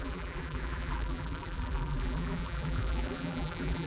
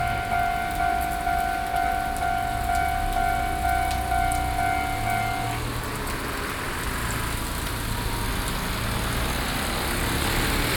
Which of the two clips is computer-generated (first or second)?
first